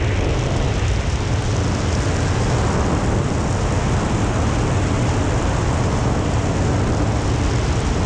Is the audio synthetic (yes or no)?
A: no